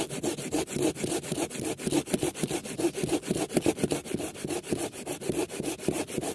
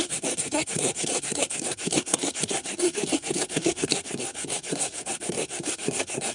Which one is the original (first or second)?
first